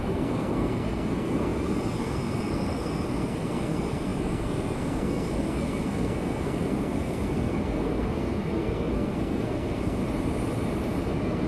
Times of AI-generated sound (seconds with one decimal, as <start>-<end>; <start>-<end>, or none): 0.0-10.0; 11.0-11.5